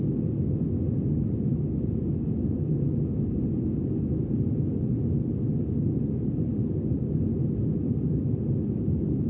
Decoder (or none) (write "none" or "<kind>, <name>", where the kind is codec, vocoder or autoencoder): none